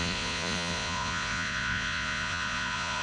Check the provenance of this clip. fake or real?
fake